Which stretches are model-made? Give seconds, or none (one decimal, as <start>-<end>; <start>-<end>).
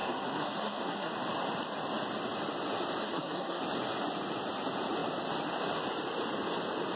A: 0.0-1.1; 3.0-3.6